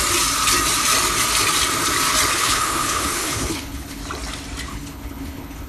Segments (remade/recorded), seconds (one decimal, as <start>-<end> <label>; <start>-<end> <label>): 0.0-2.3 recorded; 2.3-4.0 remade; 4.0-4.7 recorded; 4.7-5.7 remade